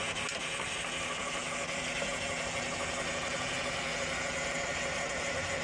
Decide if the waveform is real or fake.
real